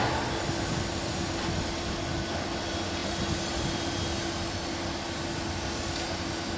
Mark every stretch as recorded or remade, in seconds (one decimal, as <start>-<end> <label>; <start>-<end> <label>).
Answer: 0.0-6.6 recorded